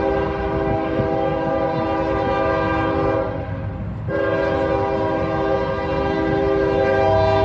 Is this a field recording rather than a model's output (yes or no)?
yes